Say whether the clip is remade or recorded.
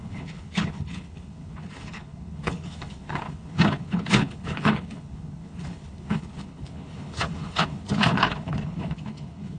remade